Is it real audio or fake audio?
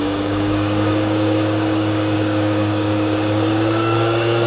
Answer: fake